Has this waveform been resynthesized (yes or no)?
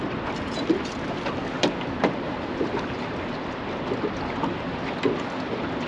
no